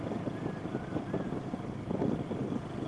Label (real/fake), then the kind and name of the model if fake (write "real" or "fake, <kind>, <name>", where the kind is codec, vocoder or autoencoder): real